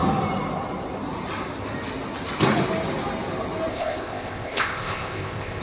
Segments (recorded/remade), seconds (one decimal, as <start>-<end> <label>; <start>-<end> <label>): 0.0-3.7 recorded; 3.7-5.6 remade